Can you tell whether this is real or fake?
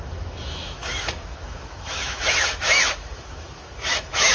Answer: fake